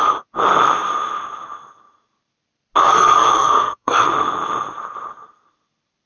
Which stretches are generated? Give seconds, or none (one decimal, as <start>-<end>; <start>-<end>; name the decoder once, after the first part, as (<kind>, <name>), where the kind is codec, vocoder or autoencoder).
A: 2.8-4.1 (codec, SNAC)